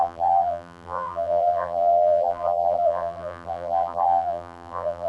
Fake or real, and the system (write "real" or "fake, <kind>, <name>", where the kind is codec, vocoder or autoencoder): fake, vocoder, BigVGAN v2